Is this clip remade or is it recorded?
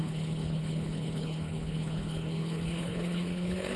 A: remade